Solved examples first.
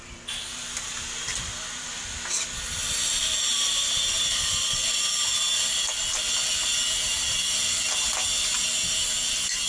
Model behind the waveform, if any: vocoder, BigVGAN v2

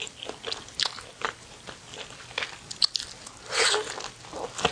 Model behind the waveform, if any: none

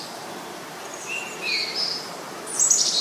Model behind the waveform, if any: vocoder, BigVGAN v2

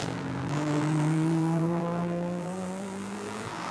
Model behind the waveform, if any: vocoder, BigVGAN v2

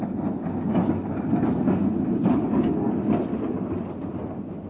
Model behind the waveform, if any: none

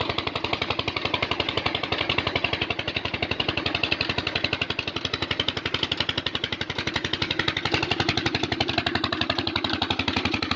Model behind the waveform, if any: vocoder, BigVGAN v2